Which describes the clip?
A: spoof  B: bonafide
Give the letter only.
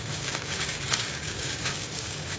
A